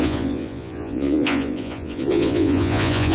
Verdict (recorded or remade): remade